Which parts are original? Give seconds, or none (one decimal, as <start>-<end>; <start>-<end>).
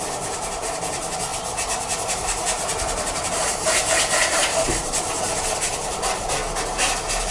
6.4-7.3